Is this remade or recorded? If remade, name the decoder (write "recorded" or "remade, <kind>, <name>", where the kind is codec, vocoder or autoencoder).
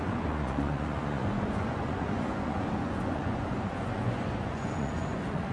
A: remade, vocoder, Vocos